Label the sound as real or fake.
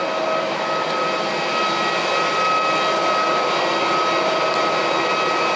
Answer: real